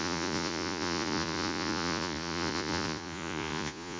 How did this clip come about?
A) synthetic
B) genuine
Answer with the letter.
A